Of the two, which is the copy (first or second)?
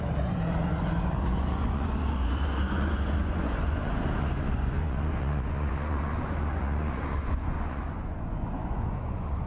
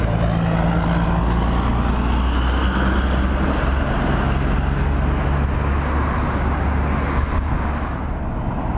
first